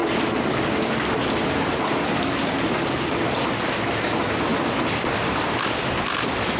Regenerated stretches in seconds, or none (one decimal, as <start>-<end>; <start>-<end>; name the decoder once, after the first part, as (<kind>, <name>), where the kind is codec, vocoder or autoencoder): none